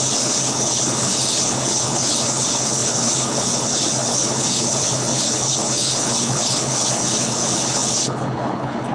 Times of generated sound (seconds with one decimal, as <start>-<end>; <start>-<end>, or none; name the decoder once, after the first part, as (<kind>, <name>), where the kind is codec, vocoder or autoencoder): 0.0-8.9 (codec, HILCodec)